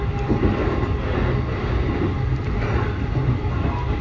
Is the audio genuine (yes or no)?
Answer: yes